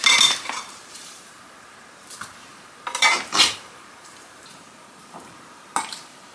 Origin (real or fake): fake